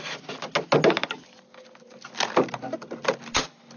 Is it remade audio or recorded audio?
recorded